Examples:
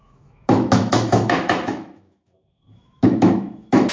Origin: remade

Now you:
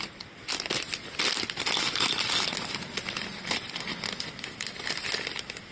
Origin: recorded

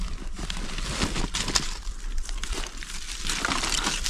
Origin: recorded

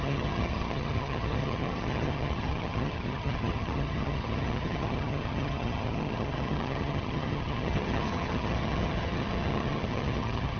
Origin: remade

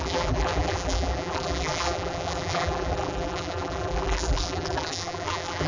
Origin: remade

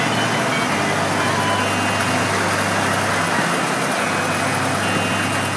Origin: recorded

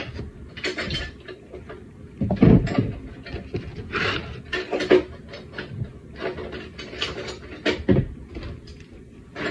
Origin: recorded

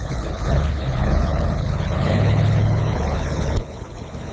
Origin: remade